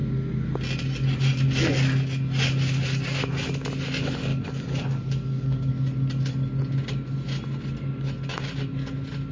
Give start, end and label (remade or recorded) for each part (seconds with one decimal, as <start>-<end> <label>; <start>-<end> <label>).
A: 0.0-4.3 recorded; 4.3-5.7 remade; 5.7-9.3 recorded